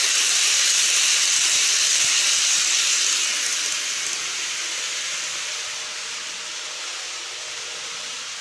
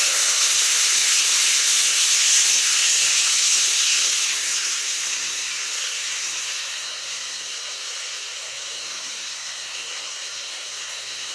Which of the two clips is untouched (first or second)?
first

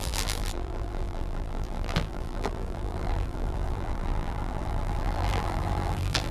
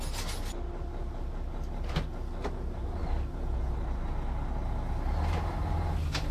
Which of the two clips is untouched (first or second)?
second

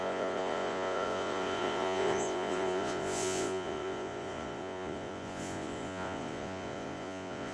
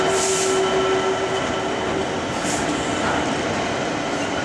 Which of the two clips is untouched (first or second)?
second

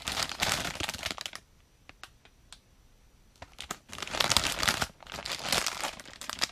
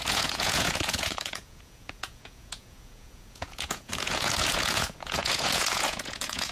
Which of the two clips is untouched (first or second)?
first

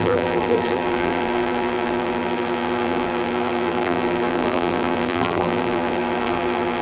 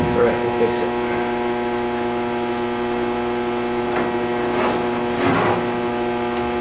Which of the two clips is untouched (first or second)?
second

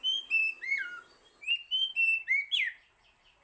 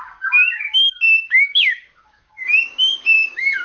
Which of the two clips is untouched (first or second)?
first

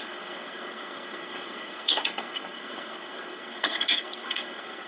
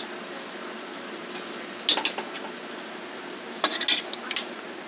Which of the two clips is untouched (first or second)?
second